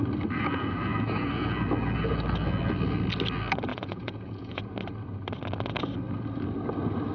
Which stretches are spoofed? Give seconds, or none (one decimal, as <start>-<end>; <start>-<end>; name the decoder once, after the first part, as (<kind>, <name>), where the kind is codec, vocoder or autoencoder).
3.7-4.6 (vocoder, Vocos)